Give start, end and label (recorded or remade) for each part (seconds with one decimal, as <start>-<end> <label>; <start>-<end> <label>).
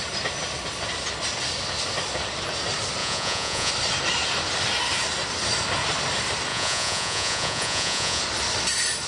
0.0-3.0 recorded; 3.0-3.7 remade; 3.7-6.5 recorded; 6.5-8.2 remade; 8.2-9.1 recorded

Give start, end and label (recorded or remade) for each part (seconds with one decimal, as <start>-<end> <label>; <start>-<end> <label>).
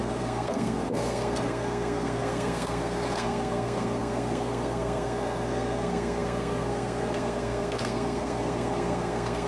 0.0-9.5 remade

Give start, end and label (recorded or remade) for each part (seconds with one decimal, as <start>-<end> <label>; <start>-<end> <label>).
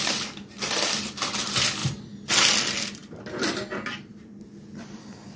0.0-5.4 recorded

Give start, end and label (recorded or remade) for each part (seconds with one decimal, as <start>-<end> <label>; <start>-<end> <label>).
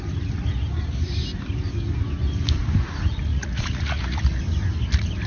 0.0-3.3 recorded; 3.3-4.4 remade; 4.4-5.3 recorded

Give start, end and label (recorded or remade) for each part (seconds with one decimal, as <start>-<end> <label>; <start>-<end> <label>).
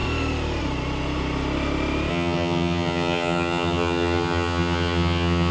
0.0-2.1 recorded; 2.1-5.5 remade